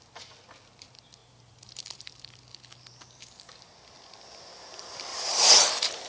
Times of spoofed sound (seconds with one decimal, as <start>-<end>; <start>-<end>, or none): 1.2-2.1; 5.1-6.1

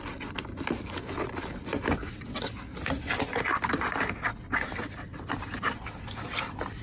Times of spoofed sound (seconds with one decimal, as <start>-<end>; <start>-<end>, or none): none

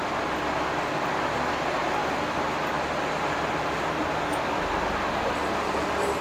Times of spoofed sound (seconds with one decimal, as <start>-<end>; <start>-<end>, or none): 2.0-4.6

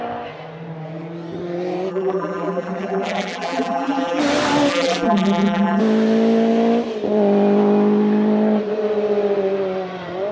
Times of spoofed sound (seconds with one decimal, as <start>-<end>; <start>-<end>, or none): 1.9-4.2; 4.7-5.8

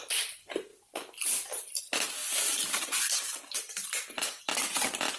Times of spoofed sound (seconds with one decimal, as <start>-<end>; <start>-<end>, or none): 0.7-1.8; 2.2-4.4